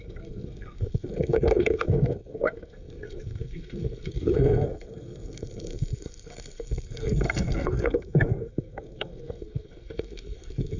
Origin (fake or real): fake